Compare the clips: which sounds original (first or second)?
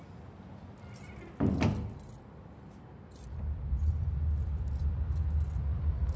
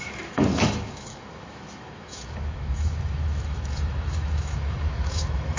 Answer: first